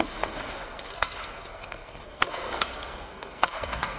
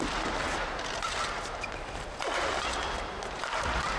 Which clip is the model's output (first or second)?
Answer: first